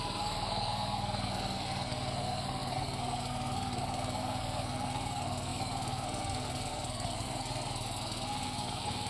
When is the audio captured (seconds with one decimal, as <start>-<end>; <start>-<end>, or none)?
none